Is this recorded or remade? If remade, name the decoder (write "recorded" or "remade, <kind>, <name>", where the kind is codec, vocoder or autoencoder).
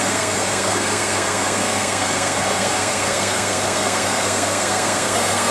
remade, codec, SNAC